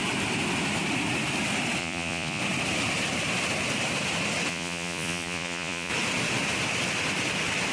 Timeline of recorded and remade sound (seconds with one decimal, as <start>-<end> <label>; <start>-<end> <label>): 0.0-1.8 recorded; 1.8-2.4 remade; 2.4-4.5 recorded; 4.5-5.9 remade; 5.9-7.7 recorded

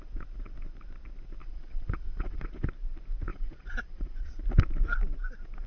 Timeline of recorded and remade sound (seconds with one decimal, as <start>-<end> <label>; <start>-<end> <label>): 0.0-1.4 recorded; 1.4-2.5 remade; 2.5-3.3 recorded; 3.3-4.4 remade; 4.4-5.7 recorded

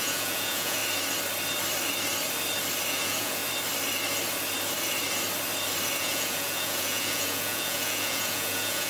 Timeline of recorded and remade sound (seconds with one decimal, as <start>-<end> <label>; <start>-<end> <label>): 0.0-0.8 remade; 0.8-2.9 recorded; 2.9-3.4 remade; 3.4-6.0 recorded; 6.0-8.9 remade

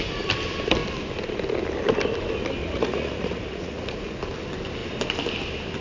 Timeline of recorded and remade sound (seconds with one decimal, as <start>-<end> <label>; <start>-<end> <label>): 0.0-2.6 recorded; 2.6-4.2 remade; 4.2-5.8 recorded

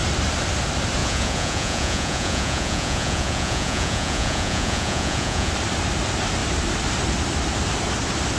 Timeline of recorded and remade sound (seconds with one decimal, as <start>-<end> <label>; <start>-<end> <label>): 0.0-1.0 recorded; 1.0-5.5 remade; 5.5-8.4 recorded

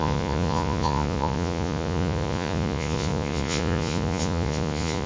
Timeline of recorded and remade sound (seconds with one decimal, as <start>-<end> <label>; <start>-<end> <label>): 0.0-5.1 remade